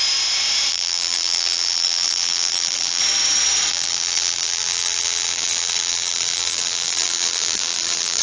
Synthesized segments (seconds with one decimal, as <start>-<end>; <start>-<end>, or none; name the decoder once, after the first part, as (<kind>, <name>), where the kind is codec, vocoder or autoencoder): 0.7-3.0 (vocoder, BigVGAN v2); 3.7-8.2